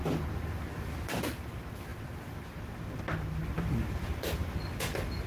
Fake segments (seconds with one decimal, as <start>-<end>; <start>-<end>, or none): none